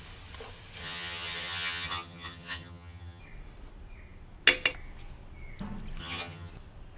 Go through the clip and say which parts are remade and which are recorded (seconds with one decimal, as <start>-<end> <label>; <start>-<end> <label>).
0.0-0.8 recorded; 0.8-3.2 remade; 3.2-6.0 recorded; 6.0-6.5 remade; 6.5-7.0 recorded